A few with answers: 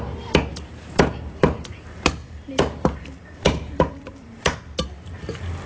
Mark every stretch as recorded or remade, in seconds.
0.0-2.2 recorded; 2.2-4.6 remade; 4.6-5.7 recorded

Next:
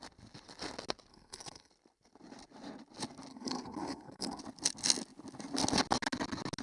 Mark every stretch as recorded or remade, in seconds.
0.0-1.1 recorded; 1.1-1.7 remade; 1.7-3.3 recorded; 3.3-4.4 remade; 4.4-6.6 recorded

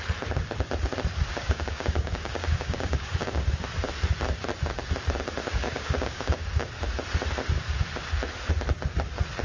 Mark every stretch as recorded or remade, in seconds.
0.0-1.3 recorded; 1.3-3.6 remade; 3.6-5.4 recorded; 5.4-6.7 remade; 6.7-9.4 recorded

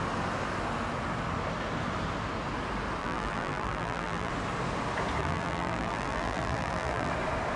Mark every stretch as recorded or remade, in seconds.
0.0-3.0 recorded; 3.0-4.3 remade; 4.3-5.2 recorded; 5.2-7.1 remade; 7.1-7.6 recorded

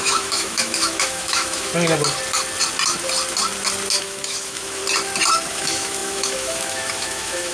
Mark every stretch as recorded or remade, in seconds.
0.0-1.7 remade; 1.7-4.0 recorded; 4.0-4.8 remade; 4.8-5.5 recorded; 5.5-7.5 remade